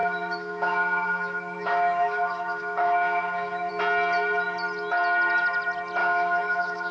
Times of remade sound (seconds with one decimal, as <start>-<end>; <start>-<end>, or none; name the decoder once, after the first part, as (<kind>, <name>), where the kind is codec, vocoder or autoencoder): 0.0-3.7 (autoencoder, DAC-VAE); 6.0-6.9